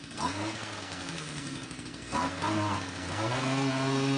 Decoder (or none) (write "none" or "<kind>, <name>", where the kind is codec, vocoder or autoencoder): codec, SNAC